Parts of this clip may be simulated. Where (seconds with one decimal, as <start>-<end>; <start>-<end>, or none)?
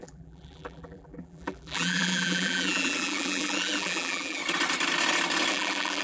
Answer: 0.0-4.4; 5.5-6.0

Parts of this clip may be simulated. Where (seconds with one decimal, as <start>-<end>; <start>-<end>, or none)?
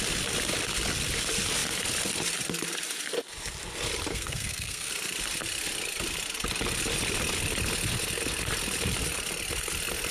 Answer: 4.1-4.9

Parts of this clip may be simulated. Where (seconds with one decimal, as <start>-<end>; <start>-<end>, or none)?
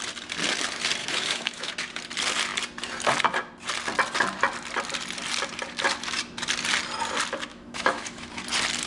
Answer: 1.0-1.7; 7.5-8.3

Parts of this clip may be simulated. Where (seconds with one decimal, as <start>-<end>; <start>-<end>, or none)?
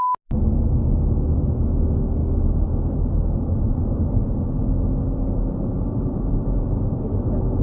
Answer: none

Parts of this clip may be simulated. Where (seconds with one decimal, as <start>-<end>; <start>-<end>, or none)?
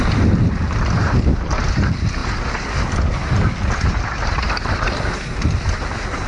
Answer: 0.0-2.2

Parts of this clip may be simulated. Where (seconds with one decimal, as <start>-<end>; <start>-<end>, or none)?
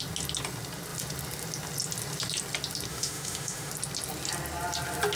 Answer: 2.9-3.7